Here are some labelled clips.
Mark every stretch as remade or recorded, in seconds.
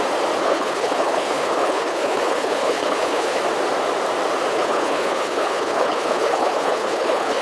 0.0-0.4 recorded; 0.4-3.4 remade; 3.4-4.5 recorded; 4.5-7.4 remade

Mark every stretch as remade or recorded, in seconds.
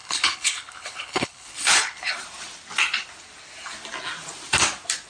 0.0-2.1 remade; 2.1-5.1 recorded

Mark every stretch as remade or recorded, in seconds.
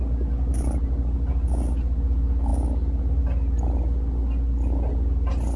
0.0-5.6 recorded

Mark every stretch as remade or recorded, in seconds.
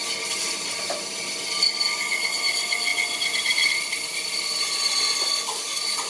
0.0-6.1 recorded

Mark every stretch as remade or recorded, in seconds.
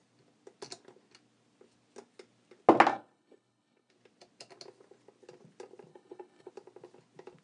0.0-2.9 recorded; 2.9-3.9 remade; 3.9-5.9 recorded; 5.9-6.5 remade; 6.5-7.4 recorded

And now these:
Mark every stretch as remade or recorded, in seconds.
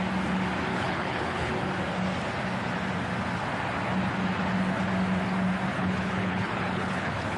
0.0-0.7 recorded; 0.7-1.5 remade; 1.5-5.7 recorded; 5.7-7.4 remade